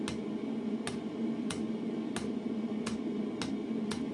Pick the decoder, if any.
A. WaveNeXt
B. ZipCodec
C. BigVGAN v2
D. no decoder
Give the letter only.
D